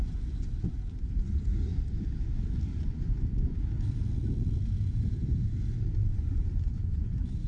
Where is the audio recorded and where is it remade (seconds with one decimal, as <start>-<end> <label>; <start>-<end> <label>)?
0.0-2.7 recorded; 2.7-3.6 remade; 3.6-6.1 recorded; 6.1-7.5 remade

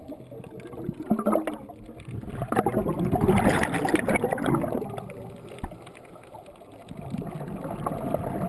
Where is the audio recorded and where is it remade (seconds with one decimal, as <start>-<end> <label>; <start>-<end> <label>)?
0.0-8.5 recorded